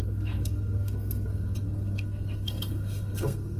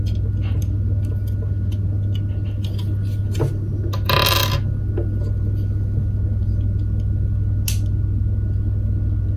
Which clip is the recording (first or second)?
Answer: second